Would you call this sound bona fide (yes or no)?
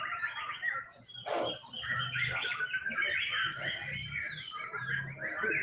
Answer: yes